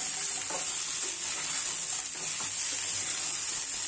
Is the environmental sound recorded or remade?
recorded